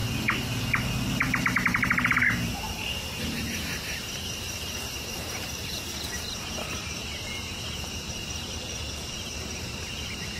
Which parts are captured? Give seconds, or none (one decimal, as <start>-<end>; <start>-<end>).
0.0-1.3